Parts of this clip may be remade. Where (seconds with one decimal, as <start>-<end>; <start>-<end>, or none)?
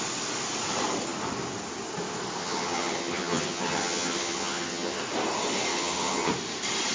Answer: 2.4-5.0; 5.7-6.3